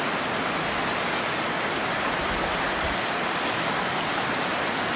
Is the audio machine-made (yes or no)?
no